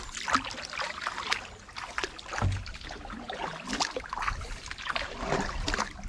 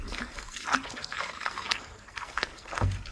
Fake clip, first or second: second